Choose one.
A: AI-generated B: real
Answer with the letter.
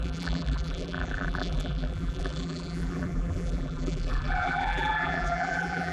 A